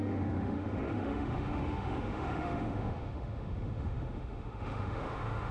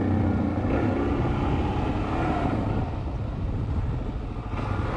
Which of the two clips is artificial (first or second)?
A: first